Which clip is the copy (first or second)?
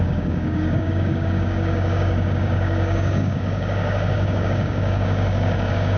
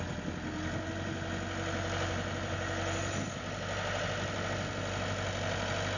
first